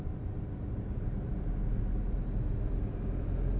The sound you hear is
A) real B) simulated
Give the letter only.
A